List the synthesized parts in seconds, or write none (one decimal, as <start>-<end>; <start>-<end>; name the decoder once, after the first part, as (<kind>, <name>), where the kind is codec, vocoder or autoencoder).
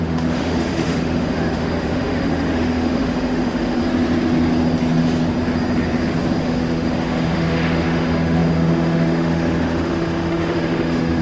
0.0-3.8 (autoencoder, DAC-VAE); 6.4-11.2